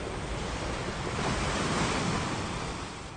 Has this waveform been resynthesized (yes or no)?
no